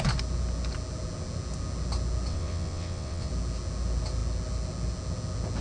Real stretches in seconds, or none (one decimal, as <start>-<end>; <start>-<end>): 0.0-2.3; 3.3-5.6